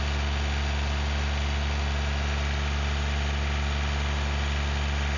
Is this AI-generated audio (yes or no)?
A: no